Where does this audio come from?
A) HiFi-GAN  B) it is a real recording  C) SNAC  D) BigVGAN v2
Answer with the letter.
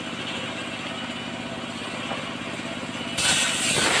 B